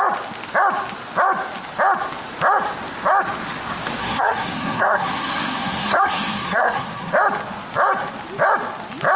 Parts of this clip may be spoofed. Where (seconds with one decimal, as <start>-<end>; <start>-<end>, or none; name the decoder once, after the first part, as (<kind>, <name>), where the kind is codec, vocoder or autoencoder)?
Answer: 4.0-7.1 (codec, SNAC)